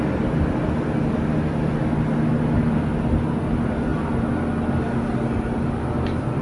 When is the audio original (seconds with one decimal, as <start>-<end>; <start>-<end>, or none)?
0.0-6.4

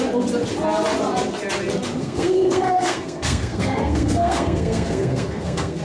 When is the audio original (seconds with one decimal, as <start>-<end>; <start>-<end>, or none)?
0.0-2.0